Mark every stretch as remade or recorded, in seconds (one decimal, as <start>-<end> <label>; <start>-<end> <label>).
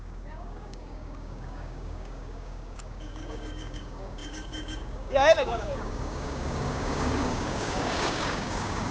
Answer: 0.0-8.9 remade